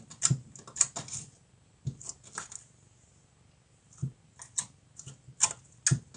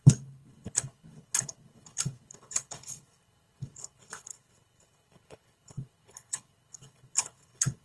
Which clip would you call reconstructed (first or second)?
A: second